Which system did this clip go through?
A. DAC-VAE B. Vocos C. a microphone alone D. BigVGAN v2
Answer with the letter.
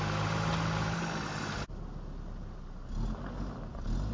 C